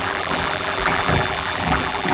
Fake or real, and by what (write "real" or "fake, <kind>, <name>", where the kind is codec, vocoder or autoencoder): fake, vocoder, BigVGAN v2